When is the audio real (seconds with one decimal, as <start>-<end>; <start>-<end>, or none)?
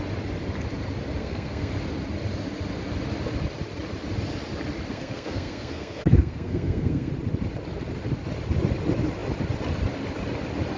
0.0-1.2; 1.7-4.9; 7.1-10.8